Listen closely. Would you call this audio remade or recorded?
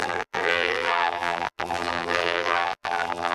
remade